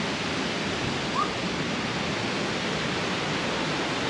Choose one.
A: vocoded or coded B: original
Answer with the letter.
B